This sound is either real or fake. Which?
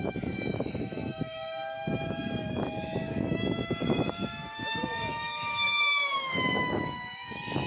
fake